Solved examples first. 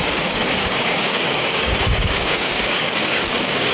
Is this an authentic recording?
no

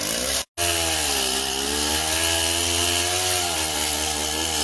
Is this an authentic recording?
yes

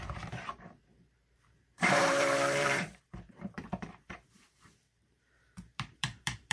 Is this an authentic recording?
no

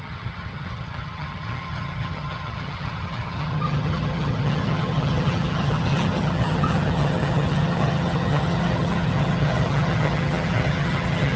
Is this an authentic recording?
no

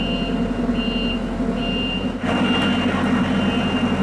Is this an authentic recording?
yes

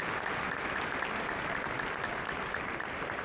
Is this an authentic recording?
yes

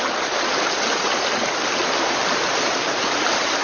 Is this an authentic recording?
yes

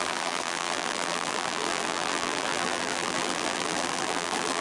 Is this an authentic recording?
no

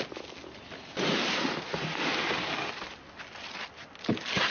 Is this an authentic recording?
yes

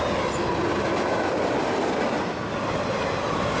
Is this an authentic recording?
yes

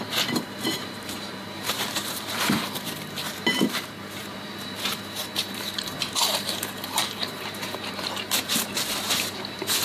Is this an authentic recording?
no